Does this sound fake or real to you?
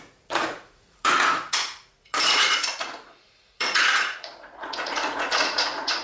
fake